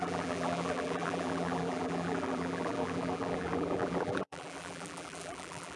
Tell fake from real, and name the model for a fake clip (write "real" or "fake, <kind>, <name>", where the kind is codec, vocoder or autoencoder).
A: fake, vocoder, BigVGAN v2